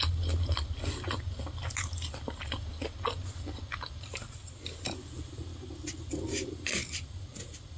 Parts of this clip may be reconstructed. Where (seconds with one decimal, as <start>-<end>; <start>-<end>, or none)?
none